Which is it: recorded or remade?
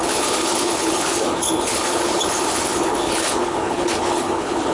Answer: remade